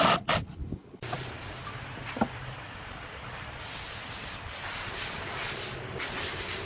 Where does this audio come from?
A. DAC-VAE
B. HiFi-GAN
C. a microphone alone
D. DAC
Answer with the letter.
C